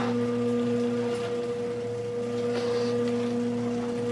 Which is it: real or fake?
real